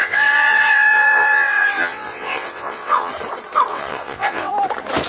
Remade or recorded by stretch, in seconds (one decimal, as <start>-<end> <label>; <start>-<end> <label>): 0.0-3.1 remade; 3.1-3.7 recorded; 3.7-4.5 remade; 4.5-5.1 recorded